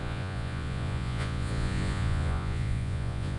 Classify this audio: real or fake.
fake